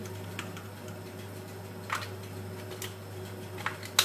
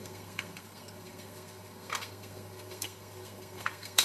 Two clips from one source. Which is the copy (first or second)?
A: second